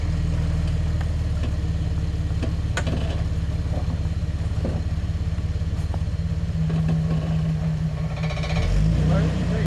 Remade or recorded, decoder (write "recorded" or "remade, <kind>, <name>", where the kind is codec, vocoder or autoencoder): recorded